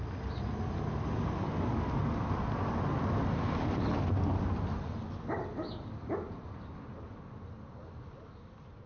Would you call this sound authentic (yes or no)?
yes